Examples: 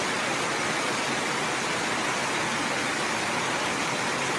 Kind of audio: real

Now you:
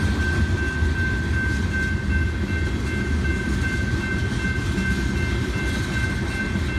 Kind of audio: real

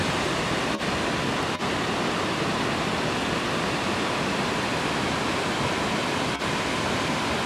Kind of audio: real